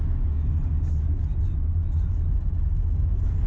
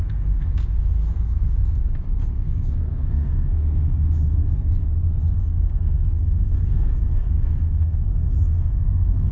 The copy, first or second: second